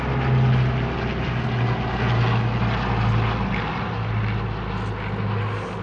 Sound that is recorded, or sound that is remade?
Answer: recorded